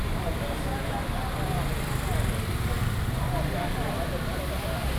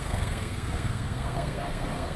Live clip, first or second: first